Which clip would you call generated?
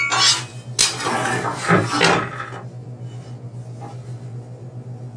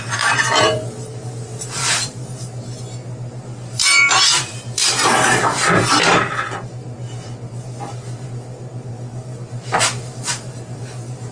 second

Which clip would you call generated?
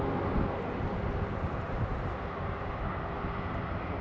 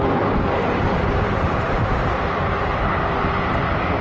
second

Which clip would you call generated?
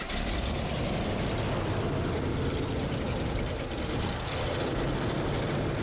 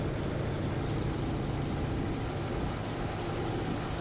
first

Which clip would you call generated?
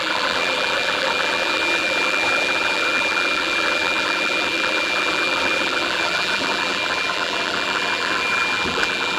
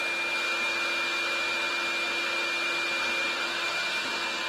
first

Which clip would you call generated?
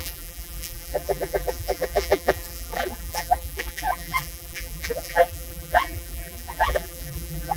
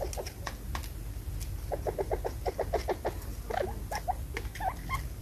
first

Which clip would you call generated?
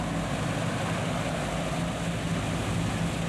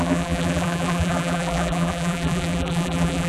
second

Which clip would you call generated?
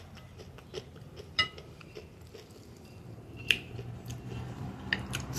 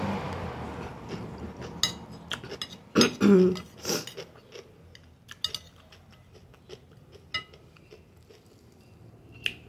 first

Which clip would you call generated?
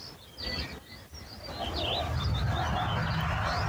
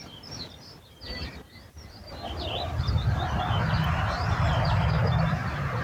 second